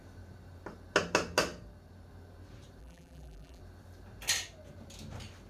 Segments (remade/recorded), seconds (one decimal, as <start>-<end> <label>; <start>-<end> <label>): 0.0-2.8 recorded; 2.8-3.6 remade; 3.6-5.5 recorded